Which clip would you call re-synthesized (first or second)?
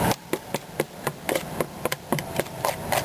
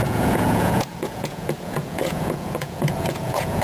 second